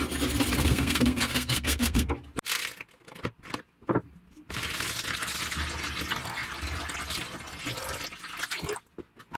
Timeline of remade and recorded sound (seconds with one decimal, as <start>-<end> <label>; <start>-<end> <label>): 0.0-0.6 recorded; 0.6-2.1 remade; 2.1-9.4 recorded